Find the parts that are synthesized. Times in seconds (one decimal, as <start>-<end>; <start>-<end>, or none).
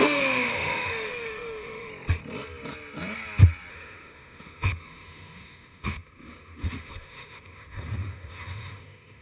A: 0.0-1.9; 3.7-9.2